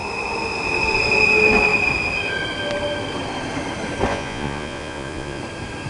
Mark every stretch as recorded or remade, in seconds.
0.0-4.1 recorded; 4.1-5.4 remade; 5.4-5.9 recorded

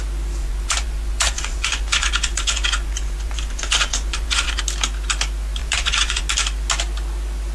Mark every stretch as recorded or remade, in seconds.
0.0-0.4 recorded; 0.4-4.6 remade; 4.6-5.6 recorded; 5.6-6.2 remade; 6.2-7.5 recorded

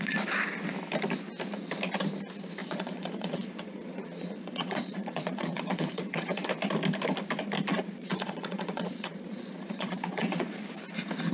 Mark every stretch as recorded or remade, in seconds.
0.0-2.6 recorded; 2.6-6.5 remade; 6.5-7.7 recorded; 7.7-10.6 remade; 10.6-11.3 recorded

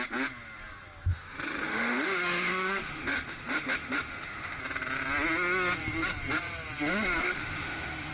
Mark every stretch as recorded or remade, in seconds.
0.0-1.1 recorded; 1.1-4.6 remade; 4.6-7.2 recorded; 7.2-8.1 remade

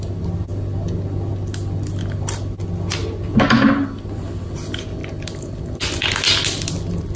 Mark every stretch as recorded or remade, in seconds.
0.0-7.2 recorded

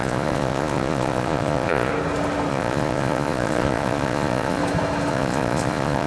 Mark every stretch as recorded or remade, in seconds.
0.0-1.9 remade; 1.9-2.5 recorded; 2.5-4.6 remade; 4.6-5.1 recorded; 5.1-6.1 remade